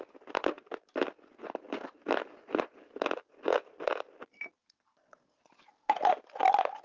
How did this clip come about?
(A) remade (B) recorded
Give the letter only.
B